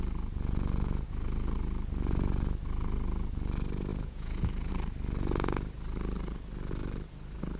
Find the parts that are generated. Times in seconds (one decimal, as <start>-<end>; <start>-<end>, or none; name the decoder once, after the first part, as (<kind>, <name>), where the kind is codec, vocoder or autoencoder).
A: 3.9-4.7 (vocoder, Vocos)